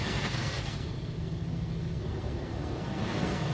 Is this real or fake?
fake